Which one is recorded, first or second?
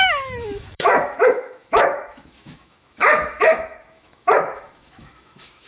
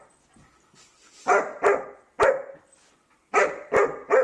second